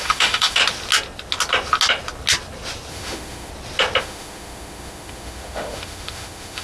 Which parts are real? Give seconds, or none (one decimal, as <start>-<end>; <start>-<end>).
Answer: 0.6-2.9; 3.5-4.0